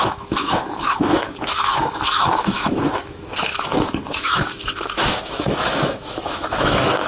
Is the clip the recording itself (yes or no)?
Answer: no